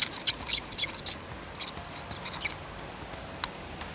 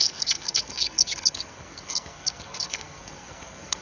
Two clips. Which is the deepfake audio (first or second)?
second